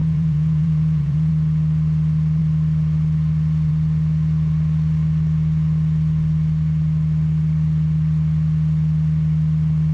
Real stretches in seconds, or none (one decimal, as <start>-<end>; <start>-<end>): 1.3-9.9